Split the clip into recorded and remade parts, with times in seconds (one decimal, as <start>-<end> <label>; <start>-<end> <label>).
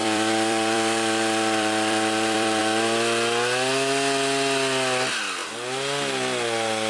0.0-2.6 remade; 2.6-6.9 recorded